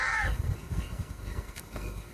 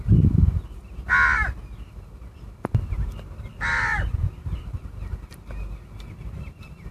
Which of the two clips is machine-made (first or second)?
first